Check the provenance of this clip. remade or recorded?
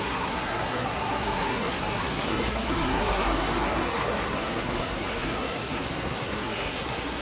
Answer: remade